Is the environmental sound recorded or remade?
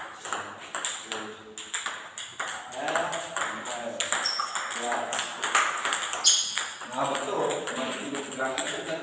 recorded